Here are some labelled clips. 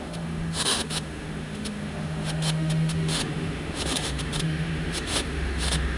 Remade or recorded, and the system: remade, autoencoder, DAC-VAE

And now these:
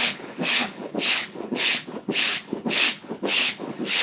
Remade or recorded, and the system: remade, codec, HILCodec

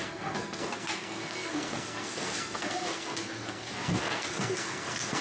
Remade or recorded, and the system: remade, codec, SNAC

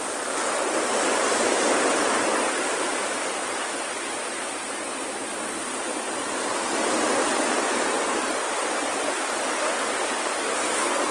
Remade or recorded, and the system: recorded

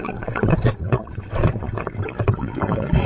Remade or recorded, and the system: remade, vocoder, WaveNeXt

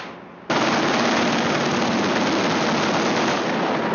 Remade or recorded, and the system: recorded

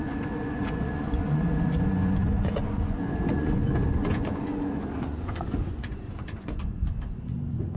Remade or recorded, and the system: remade, vocoder, Vocos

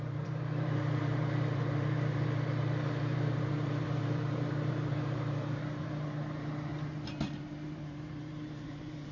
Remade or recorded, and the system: remade, vocoder, BigVGAN v2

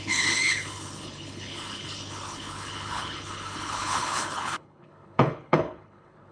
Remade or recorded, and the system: remade, codec, HILCodec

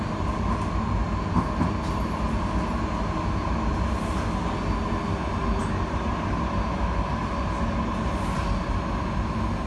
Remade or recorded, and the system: recorded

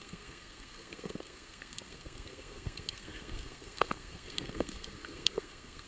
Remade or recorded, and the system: remade, codec, SNAC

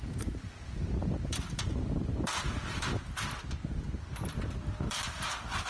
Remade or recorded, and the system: remade, vocoder, BigVGAN v2